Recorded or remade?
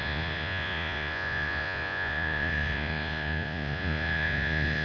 remade